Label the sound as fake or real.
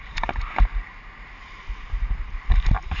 real